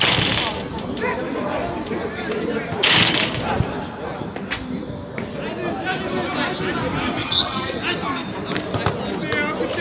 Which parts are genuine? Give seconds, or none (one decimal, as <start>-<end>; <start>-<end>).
0.0-7.2; 7.8-9.8